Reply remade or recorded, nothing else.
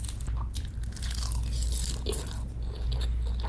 recorded